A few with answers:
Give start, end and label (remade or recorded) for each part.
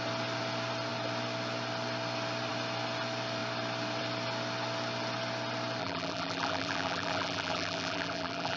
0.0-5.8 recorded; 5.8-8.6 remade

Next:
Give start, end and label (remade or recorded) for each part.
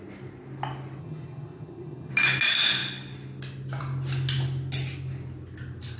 0.0-1.0 recorded; 1.0-2.1 remade; 2.1-6.0 recorded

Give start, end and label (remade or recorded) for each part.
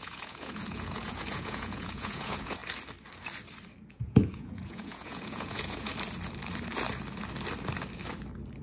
0.0-2.6 remade; 2.6-3.9 recorded; 3.9-5.9 remade; 5.9-8.6 recorded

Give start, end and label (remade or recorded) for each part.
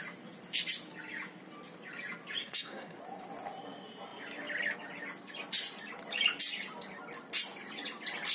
0.0-2.4 recorded; 2.4-3.0 remade; 3.0-8.3 recorded